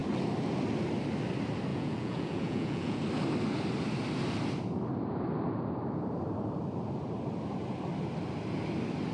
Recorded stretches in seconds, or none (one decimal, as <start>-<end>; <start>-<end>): 0.0-1.7; 3.0-9.1